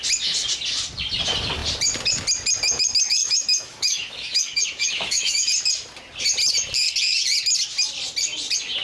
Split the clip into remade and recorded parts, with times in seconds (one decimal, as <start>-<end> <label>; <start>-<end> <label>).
0.0-3.2 recorded; 3.2-5.5 remade; 5.5-8.8 recorded